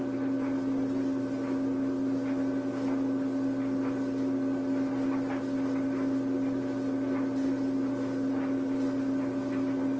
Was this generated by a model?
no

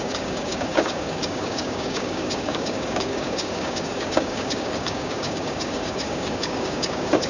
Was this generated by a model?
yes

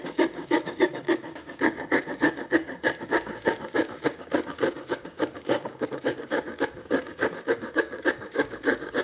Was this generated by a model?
yes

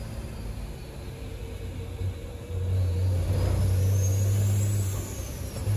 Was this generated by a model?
no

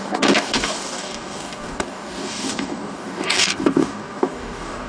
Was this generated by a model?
yes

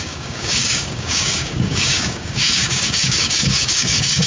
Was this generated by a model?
yes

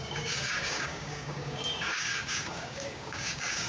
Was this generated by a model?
yes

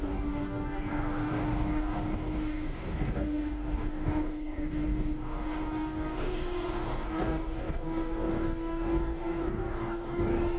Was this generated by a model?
yes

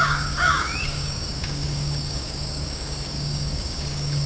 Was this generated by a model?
yes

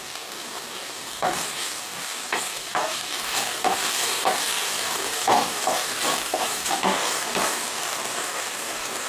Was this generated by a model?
yes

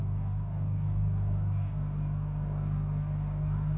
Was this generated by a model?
yes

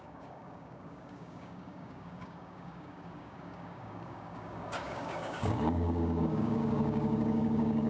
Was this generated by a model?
yes